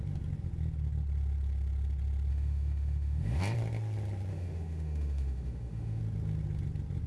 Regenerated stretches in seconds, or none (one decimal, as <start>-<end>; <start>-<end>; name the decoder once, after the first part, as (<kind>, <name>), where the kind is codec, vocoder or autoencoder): 2.3-3.4 (autoencoder, DAC-VAE); 4.3-6.0